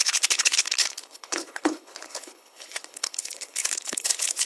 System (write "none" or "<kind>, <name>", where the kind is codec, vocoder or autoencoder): codec, HILCodec